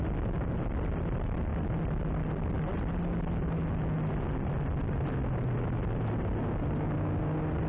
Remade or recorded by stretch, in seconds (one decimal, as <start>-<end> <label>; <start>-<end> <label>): 0.0-7.7 recorded